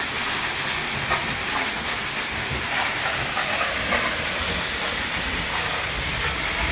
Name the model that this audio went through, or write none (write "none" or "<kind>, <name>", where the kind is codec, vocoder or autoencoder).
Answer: none